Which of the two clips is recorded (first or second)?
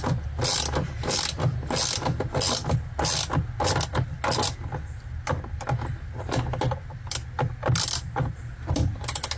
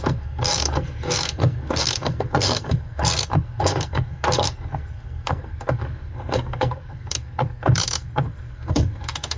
first